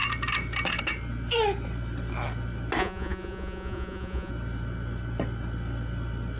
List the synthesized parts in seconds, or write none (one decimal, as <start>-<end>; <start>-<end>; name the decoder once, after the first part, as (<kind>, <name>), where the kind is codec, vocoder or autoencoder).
2.8-4.3 (vocoder, Vocos)